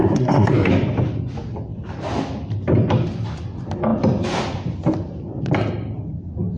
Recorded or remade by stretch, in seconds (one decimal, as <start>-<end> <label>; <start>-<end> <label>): 0.0-0.7 remade; 0.7-6.6 recorded